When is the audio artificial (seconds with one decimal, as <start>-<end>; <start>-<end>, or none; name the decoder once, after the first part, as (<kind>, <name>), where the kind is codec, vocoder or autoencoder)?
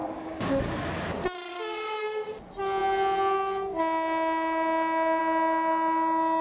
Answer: 0.0-0.6 (codec, DAC); 1.5-2.0